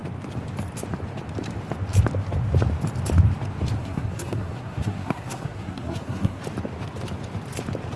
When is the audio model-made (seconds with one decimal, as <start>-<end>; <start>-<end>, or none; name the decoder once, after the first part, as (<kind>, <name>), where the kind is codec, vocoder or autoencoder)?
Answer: 3.8-6.4 (codec, SNAC)